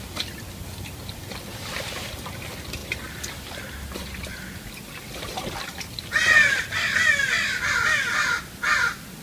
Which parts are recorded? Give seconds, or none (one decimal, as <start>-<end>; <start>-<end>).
0.0-9.2